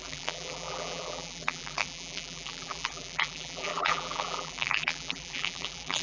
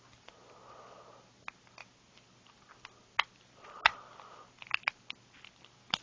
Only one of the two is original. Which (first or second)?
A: second